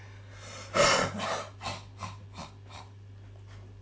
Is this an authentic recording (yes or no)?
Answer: yes